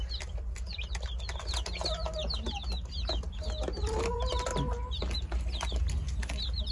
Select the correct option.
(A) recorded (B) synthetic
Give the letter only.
A